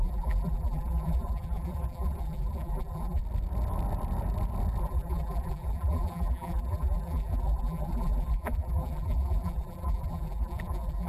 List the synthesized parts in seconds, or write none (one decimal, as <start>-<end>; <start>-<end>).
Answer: 0.0-3.2; 4.8-11.1